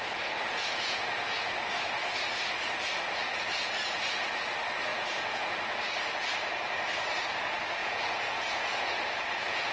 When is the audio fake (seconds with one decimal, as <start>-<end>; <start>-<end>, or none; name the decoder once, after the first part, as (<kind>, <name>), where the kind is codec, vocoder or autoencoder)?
0.5-1.6 (vocoder, Vocos); 3.2-4.4; 4.9-5.4; 7.8-9.7